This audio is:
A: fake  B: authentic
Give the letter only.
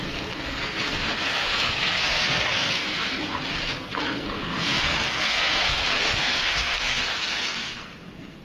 A